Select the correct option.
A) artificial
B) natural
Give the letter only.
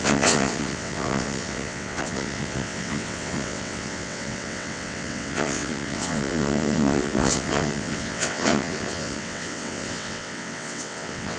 A